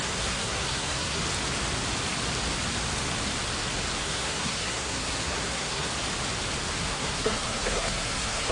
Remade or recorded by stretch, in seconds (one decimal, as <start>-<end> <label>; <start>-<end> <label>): 0.0-1.2 remade; 1.2-4.0 recorded; 4.0-5.9 remade; 5.9-6.8 recorded; 6.8-8.5 remade